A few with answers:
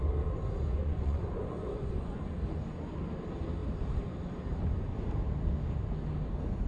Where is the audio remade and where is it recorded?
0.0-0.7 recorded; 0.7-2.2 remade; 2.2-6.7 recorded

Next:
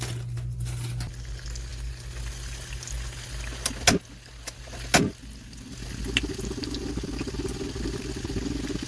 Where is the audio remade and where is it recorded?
0.0-8.9 recorded

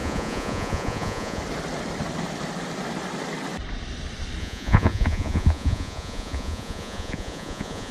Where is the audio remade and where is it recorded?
0.0-1.4 remade; 1.4-4.4 recorded; 4.4-7.9 remade

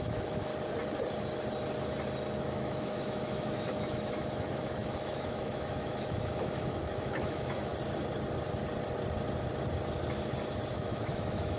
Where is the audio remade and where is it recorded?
0.0-0.5 remade; 0.5-2.4 recorded; 2.4-7.7 remade; 7.7-10.7 recorded; 10.7-11.6 remade

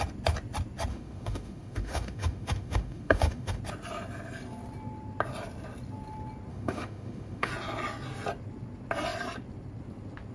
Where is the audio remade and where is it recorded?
0.0-0.9 recorded; 0.9-3.6 remade; 3.6-6.5 recorded; 6.5-7.5 remade; 7.5-10.3 recorded

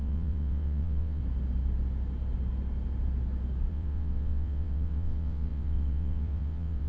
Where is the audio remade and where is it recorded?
0.0-1.2 remade; 1.2-3.7 recorded; 3.7-6.9 remade

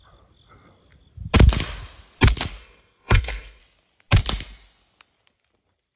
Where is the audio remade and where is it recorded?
0.0-2.6 recorded; 2.6-3.6 remade; 3.6-6.0 recorded

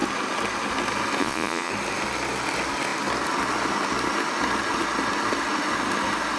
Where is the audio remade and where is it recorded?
0.0-1.2 recorded; 1.2-1.7 remade; 1.7-6.4 recorded